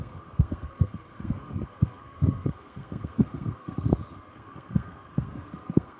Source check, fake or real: fake